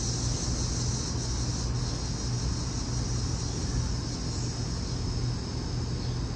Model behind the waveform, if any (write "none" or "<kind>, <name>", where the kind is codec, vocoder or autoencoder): none